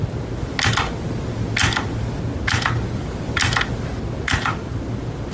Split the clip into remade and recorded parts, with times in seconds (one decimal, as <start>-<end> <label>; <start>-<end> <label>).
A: 0.0-5.3 recorded